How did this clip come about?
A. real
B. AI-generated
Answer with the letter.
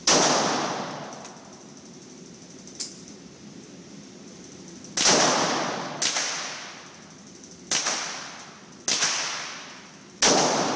A